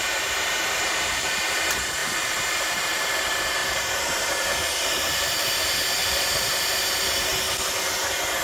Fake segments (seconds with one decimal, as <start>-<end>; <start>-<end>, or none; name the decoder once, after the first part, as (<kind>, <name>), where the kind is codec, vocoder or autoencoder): 0.0-7.3 (vocoder, BigVGAN v2)